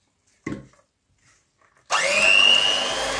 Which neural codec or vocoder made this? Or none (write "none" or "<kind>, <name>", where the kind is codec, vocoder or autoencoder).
none